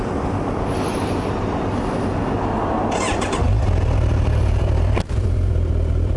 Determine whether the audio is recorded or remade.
recorded